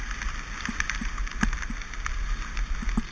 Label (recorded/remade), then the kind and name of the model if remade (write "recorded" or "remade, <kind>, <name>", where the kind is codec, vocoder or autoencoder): recorded